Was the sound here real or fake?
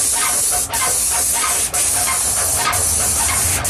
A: real